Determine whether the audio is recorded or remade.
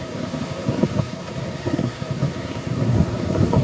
remade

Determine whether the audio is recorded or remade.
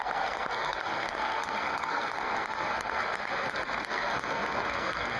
remade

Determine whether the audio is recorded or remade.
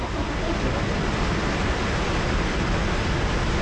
recorded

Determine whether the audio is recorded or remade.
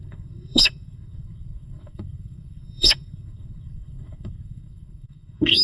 remade